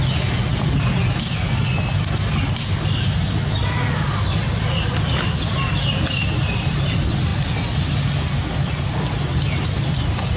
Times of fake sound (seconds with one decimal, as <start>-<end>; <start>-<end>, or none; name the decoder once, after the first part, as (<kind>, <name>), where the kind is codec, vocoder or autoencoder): none